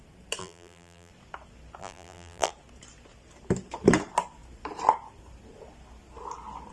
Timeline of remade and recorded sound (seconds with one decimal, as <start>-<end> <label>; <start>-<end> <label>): 0.0-0.4 recorded; 0.4-1.1 remade; 1.1-1.8 recorded; 1.8-2.5 remade; 2.5-6.7 recorded